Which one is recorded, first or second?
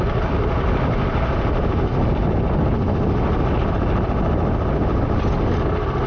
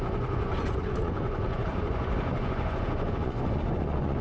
first